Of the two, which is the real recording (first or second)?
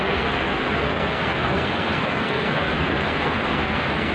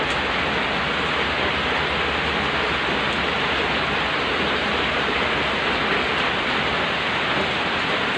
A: second